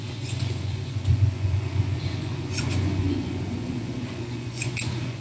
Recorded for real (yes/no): no